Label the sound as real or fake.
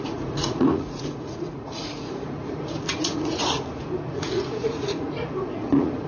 fake